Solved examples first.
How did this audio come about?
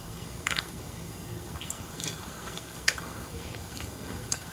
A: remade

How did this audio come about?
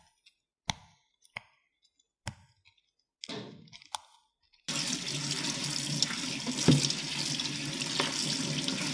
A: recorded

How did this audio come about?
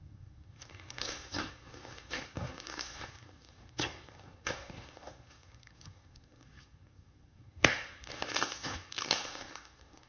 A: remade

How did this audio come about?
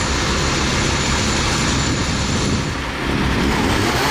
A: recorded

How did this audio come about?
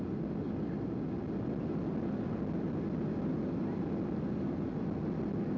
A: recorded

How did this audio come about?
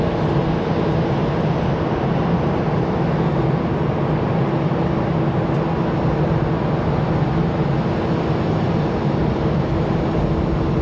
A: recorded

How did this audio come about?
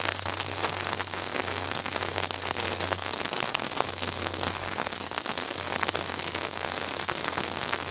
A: remade